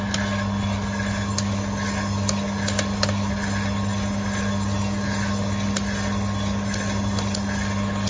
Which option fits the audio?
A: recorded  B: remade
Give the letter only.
A